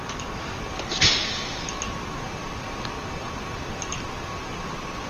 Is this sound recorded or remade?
recorded